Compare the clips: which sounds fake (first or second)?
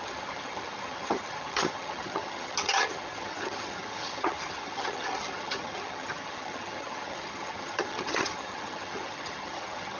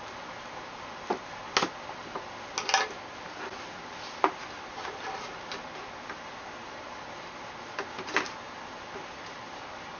first